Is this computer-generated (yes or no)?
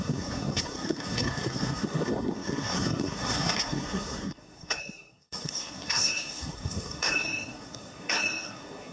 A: yes